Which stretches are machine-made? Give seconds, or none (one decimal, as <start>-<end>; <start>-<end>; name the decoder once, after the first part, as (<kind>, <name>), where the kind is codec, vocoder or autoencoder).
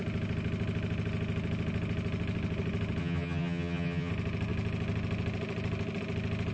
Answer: 3.0-4.1 (vocoder, HiFi-GAN)